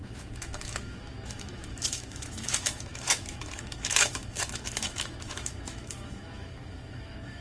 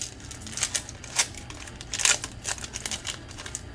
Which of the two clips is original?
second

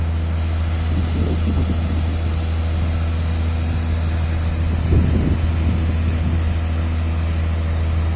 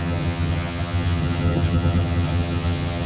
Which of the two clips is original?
first